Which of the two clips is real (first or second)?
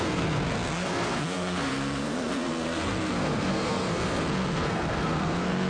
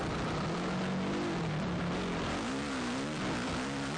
second